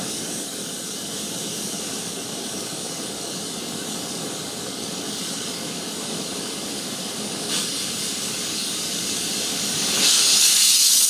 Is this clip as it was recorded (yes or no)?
no